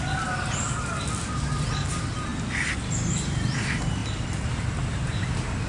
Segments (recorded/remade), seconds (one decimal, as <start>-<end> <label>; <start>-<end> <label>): 0.0-5.7 recorded